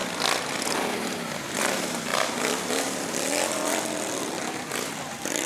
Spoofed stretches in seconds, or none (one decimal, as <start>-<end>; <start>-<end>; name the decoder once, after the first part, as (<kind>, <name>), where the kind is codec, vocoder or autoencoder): 0.8-5.5 (vocoder, BigVGAN v2)

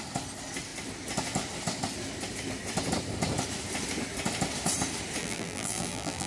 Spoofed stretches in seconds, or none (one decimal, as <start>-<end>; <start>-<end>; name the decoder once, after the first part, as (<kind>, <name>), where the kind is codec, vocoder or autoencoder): 5.2-6.3 (vocoder, BigVGAN v2)

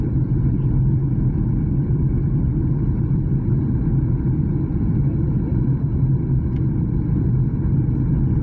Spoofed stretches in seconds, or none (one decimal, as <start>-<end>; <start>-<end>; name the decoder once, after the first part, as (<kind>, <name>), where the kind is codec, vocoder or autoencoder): 0.0-8.4 (vocoder, BigVGAN v2)